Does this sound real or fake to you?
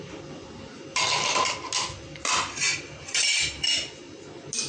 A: real